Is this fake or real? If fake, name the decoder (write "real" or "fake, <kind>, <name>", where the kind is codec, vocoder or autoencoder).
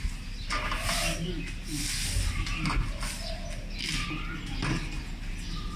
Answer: real